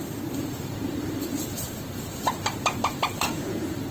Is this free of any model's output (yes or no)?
no